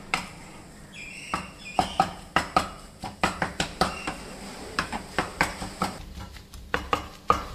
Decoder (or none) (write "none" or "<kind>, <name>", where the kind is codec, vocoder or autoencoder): vocoder, BigVGAN v2